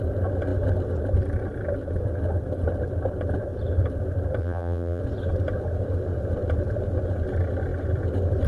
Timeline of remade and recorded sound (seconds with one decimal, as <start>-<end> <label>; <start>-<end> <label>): 0.0-4.4 recorded; 4.4-5.0 remade; 5.0-8.5 recorded